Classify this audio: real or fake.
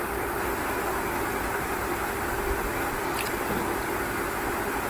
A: real